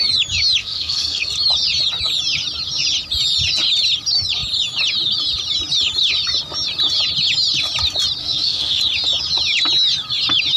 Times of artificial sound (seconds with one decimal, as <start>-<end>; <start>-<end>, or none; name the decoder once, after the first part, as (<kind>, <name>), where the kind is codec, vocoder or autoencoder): 0.6-1.3 (codec, SNAC); 8.2-8.8